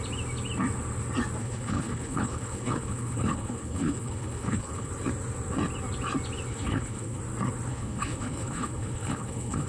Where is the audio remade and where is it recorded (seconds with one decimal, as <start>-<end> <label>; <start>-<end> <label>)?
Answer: 0.0-1.4 recorded; 1.4-4.9 remade; 4.9-6.5 recorded; 6.5-7.2 remade; 7.2-7.7 recorded; 7.7-9.7 remade